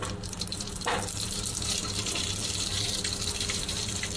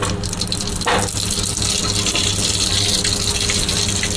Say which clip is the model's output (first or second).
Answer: first